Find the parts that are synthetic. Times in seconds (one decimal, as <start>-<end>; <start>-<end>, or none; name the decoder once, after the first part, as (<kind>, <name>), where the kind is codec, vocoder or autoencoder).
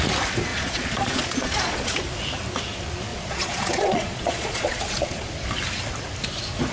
0.5-2.0 (vocoder, Vocos); 3.1-5.3